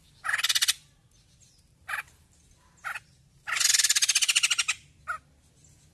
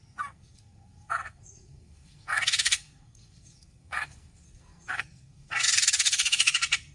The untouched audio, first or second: first